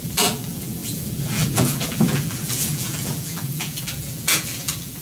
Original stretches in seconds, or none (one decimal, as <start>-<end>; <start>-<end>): none